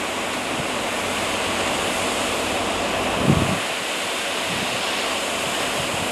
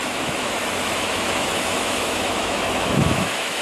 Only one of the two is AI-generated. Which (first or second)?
second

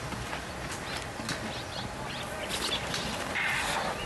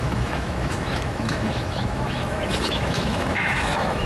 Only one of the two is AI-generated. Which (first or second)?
second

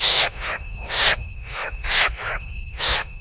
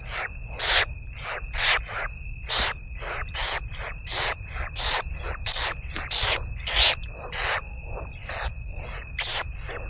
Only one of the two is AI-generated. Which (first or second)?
first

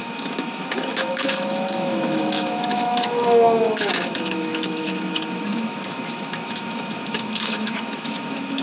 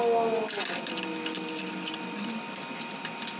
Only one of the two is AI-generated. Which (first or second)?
first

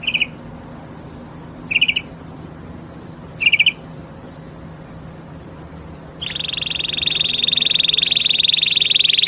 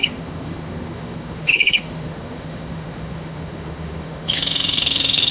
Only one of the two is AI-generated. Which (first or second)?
second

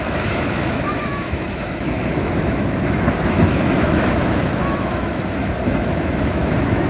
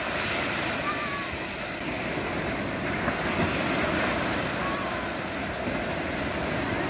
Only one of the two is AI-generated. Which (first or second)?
first